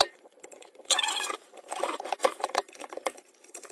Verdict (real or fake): fake